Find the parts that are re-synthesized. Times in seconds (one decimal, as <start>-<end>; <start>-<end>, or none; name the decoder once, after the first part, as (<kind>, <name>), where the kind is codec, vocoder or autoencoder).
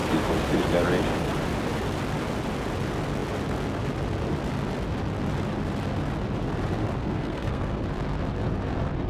7.0-7.8 (codec, SNAC)